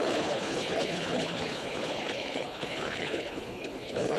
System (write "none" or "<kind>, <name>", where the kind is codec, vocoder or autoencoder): codec, HILCodec